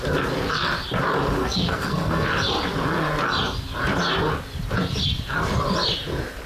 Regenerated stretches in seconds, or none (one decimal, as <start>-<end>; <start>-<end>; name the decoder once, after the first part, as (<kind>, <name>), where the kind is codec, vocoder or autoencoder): 1.4-2.3 (codec, SNAC)